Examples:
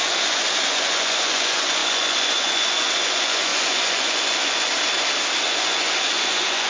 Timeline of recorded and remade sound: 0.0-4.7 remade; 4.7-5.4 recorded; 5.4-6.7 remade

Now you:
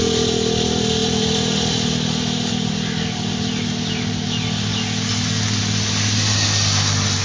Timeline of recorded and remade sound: 0.0-7.2 recorded

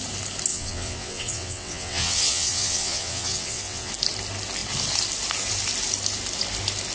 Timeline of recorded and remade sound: 0.0-0.5 recorded; 0.5-3.9 remade; 3.9-6.9 recorded